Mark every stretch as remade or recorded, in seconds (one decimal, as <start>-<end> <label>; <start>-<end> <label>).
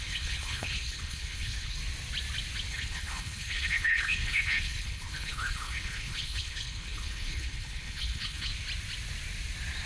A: 0.0-1.8 remade; 1.8-2.7 recorded; 2.7-8.5 remade; 8.5-9.9 recorded